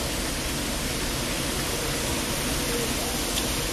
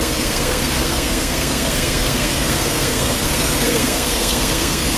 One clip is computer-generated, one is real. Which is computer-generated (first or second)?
second